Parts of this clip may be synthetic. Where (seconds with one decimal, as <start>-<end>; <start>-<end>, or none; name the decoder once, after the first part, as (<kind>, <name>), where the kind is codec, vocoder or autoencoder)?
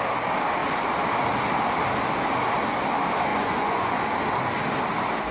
3.3-4.0 (vocoder, Vocos)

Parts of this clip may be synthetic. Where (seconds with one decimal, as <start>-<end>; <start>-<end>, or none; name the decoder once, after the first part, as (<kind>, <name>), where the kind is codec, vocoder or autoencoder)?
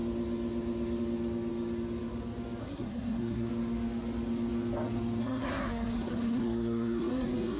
2.6-3.5 (codec, SNAC); 5.2-7.6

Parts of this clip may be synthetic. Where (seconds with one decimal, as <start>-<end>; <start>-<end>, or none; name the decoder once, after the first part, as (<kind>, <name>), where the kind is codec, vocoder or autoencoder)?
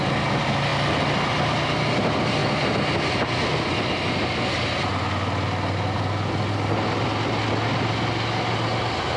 none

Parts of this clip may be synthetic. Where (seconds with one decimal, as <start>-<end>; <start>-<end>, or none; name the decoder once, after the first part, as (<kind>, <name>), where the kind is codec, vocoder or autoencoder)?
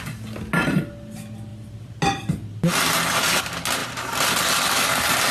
none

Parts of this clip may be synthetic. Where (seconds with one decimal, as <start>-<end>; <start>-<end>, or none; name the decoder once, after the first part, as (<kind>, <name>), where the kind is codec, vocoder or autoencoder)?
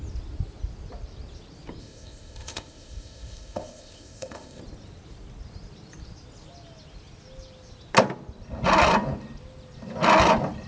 1.8-4.6 (codec, ZipCodec)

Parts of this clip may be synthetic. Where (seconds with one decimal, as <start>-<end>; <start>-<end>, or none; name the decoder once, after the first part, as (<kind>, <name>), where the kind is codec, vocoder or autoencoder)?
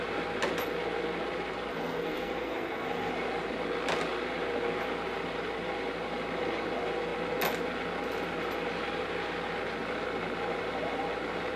1.7-3.1 (codec, SNAC)